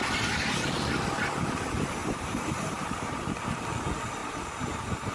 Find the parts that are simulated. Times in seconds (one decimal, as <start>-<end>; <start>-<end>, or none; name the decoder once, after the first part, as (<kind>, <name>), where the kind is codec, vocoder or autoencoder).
2.0-3.4 (vocoder, BigVGAN v2); 4.2-5.1